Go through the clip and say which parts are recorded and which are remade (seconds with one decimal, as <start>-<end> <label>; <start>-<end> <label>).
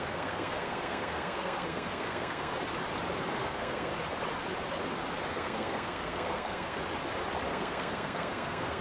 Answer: 0.0-2.5 remade; 2.5-3.4 recorded; 3.4-3.9 remade; 3.9-5.3 recorded; 5.3-6.8 remade; 6.8-7.5 recorded; 7.5-8.8 remade